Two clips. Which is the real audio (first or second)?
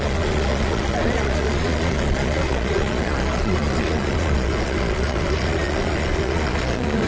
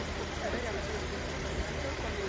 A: second